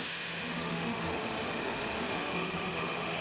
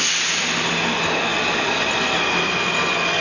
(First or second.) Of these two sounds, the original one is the second